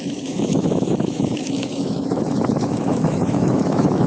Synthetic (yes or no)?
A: yes